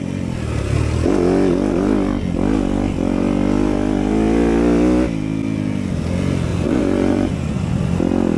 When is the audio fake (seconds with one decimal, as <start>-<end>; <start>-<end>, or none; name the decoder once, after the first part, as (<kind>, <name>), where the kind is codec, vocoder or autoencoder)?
6.5-7.9 (vocoder, Vocos)